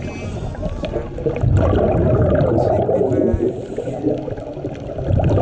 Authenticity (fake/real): real